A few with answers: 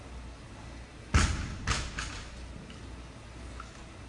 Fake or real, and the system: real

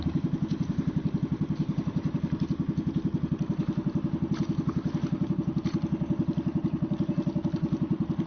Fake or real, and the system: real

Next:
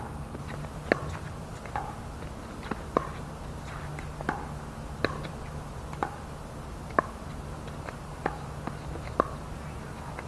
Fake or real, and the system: real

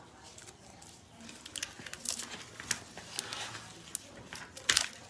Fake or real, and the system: real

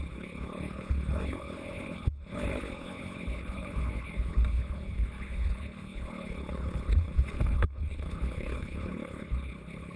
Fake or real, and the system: fake, codec, HILCodec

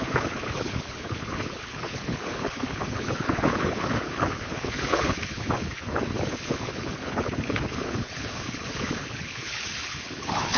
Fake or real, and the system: fake, codec, HILCodec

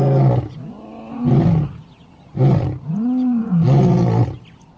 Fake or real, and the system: real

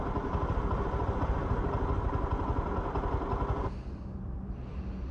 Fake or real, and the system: real